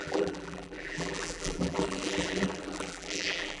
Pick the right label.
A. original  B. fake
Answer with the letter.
B